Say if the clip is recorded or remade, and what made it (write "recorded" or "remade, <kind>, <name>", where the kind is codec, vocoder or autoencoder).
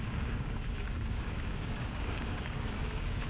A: remade, codec, DAC